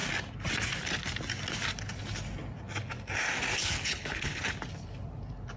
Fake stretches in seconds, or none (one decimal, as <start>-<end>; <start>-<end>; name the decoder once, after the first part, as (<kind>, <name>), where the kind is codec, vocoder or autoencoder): 3.6-4.4 (codec, HILCodec)